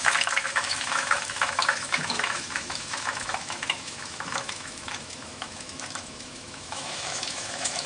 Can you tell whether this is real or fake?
fake